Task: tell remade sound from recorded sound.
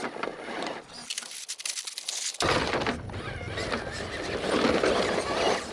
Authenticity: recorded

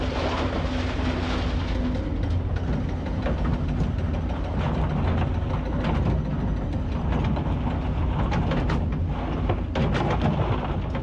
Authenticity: recorded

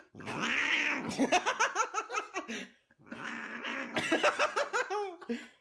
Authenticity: recorded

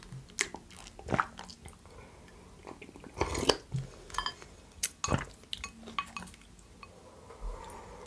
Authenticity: recorded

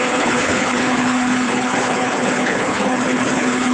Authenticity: remade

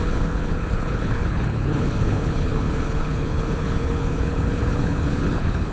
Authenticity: remade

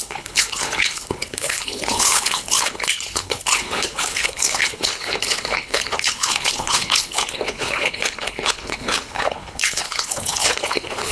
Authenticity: remade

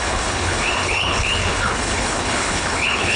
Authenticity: remade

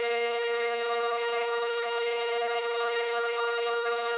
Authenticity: remade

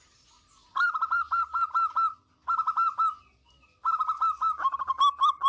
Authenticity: recorded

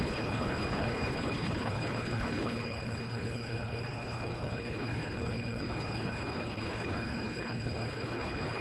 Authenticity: remade